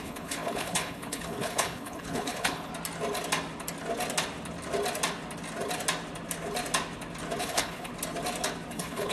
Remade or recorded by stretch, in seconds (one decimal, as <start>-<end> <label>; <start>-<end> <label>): 0.0-2.7 remade; 2.7-7.4 recorded; 7.4-7.9 remade; 7.9-8.7 recorded; 8.7-9.1 remade